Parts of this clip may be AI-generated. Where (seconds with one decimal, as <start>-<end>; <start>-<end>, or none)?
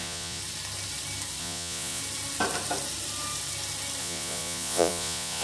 0.0-0.4; 1.4-2.0; 4.0-5.4